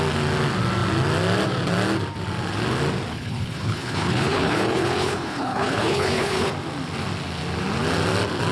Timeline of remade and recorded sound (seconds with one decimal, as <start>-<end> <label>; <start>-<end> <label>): 0.0-3.1 recorded; 3.1-6.5 remade; 6.5-8.5 recorded